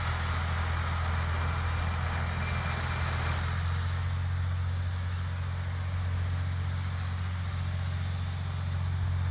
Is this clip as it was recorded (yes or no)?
yes